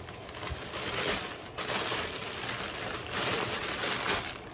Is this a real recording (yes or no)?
yes